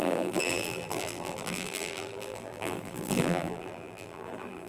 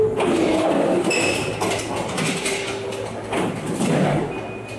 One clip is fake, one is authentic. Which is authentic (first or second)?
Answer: second